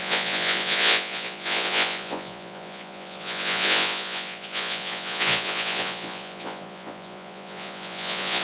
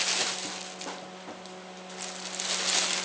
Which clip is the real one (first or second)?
second